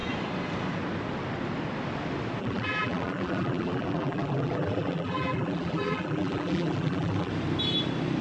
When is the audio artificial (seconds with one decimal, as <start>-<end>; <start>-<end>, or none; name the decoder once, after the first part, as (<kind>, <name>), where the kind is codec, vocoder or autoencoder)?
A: 2.4-7.3 (vocoder, BigVGAN v2)